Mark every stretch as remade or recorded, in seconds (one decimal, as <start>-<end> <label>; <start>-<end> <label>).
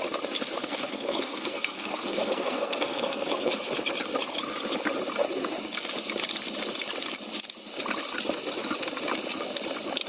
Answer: 0.0-0.6 recorded; 0.6-3.5 remade; 3.5-10.1 recorded